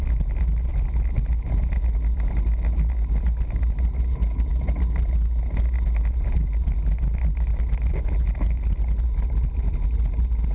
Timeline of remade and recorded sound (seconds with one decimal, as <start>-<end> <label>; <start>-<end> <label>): 0.0-10.5 recorded